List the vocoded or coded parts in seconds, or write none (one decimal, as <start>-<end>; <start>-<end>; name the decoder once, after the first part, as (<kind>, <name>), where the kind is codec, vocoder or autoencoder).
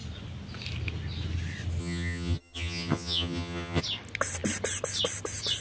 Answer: 1.8-3.8 (vocoder, HiFi-GAN)